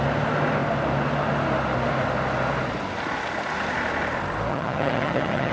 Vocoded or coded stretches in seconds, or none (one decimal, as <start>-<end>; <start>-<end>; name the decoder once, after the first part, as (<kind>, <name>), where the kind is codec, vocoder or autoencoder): 4.5-5.5 (vocoder, HiFi-GAN)